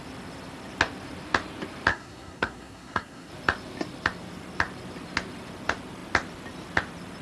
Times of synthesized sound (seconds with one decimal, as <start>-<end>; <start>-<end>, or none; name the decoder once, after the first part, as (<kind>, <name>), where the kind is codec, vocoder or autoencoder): 1.9-3.3 (codec, SNAC)